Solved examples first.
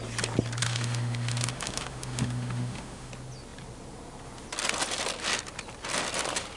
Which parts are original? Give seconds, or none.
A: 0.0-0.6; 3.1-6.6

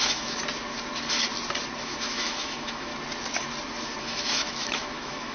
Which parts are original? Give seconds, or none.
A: 0.4-1.8; 2.9-4.0

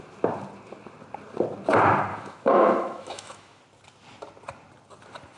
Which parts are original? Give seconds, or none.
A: 0.0-2.1; 3.6-5.4

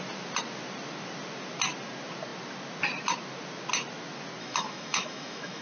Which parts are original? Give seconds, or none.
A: 0.0-4.4

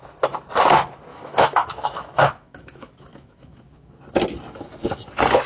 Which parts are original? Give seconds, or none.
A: 0.0-1.1; 4.0-5.5